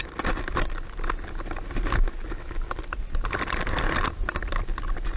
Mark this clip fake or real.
real